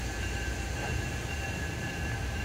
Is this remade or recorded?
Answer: recorded